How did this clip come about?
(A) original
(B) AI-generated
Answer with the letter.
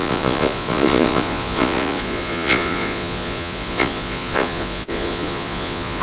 B